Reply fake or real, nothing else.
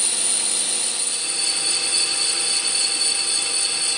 real